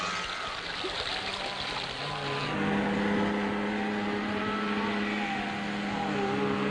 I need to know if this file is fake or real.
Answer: real